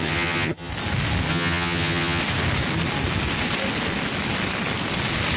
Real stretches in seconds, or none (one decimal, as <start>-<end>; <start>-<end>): 0.7-1.3; 2.2-5.4